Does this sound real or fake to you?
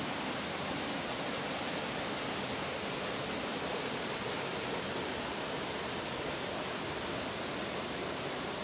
real